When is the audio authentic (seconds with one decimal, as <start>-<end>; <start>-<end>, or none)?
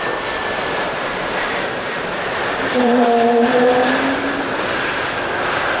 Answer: 0.0-0.4; 3.9-5.8